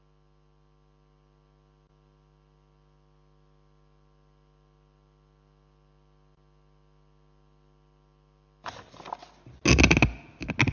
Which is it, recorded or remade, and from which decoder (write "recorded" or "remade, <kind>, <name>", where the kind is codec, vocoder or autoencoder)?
recorded